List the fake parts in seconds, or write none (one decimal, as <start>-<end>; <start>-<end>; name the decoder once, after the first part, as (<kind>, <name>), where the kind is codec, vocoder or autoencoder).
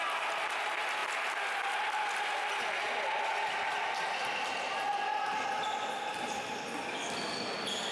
none